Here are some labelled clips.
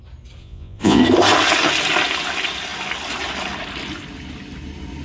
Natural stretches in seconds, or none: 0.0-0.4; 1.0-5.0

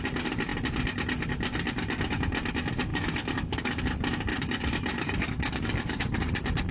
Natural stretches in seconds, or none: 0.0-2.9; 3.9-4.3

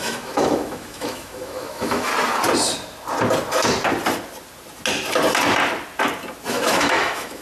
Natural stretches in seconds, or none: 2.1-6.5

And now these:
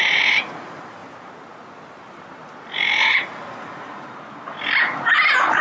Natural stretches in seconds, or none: 1.0-3.0; 4.1-5.6

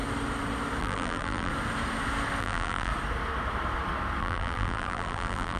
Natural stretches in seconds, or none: 0.0-0.8; 1.5-2.4; 2.9-4.2

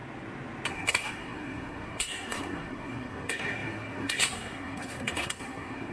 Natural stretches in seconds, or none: 0.0-0.7